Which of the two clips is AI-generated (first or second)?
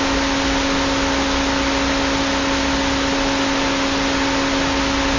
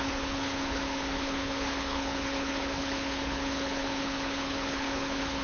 second